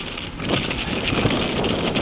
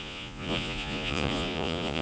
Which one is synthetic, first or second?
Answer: second